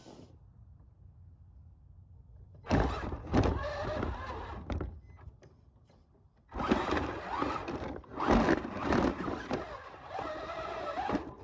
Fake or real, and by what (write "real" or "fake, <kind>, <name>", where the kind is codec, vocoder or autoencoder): real